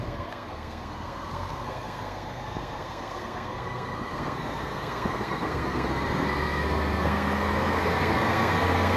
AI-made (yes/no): yes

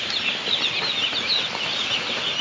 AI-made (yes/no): no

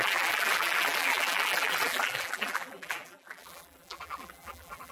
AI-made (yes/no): yes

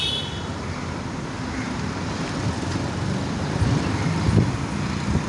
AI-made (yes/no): no